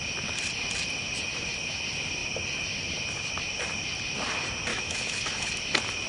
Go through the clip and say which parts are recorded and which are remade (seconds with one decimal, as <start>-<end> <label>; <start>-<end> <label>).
0.0-4.7 recorded; 4.7-5.5 remade; 5.5-6.1 recorded